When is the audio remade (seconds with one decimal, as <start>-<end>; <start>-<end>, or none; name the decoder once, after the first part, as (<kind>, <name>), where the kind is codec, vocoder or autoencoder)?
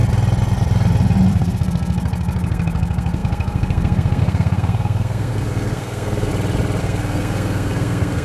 1.3-6.3 (codec, SNAC); 6.8-8.2